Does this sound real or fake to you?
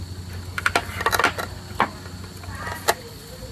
real